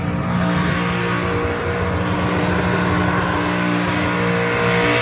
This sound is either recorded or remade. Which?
recorded